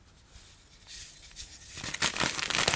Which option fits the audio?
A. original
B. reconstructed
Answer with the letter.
A